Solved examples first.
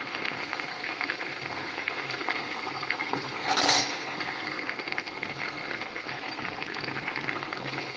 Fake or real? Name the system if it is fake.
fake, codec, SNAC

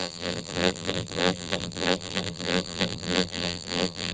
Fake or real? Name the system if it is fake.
fake, vocoder, BigVGAN v2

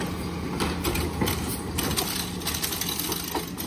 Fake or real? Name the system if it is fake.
real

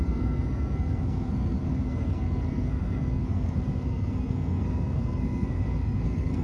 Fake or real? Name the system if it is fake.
fake, codec, SNAC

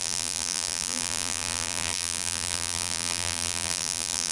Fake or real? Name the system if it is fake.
fake, vocoder, BigVGAN v2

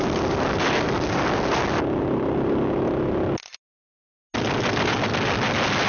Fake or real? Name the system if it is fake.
real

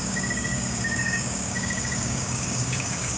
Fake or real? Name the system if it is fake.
fake, codec, DAC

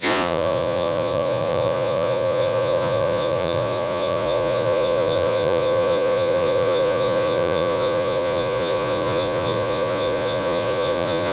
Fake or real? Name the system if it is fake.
fake, vocoder, Vocos